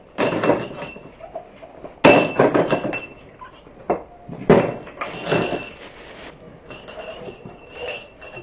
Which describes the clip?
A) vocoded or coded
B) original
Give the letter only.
B